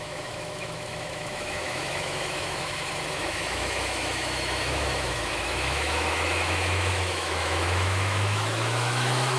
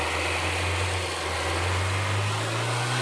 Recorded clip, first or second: second